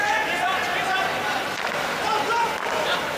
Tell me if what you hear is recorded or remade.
recorded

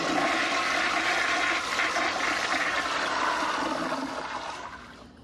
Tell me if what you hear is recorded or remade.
recorded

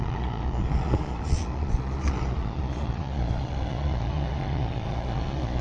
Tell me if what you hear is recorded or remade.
remade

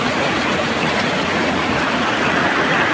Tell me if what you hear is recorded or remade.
remade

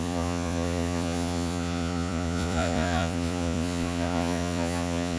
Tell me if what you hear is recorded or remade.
remade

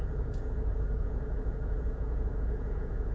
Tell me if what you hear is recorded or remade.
remade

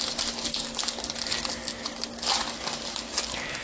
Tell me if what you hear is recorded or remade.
recorded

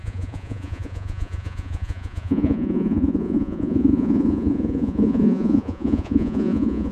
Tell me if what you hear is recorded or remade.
remade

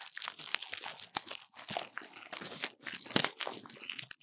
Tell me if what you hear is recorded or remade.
recorded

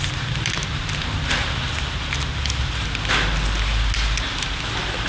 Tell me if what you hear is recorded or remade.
recorded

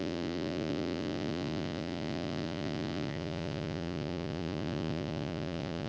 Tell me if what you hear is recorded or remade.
remade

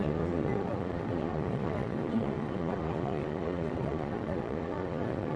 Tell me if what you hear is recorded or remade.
remade